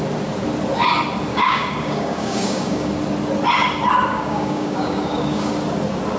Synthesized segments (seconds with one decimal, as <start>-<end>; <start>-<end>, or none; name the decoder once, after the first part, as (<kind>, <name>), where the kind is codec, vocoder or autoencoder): 1.3-2.9 (codec, DAC); 4.1-5.5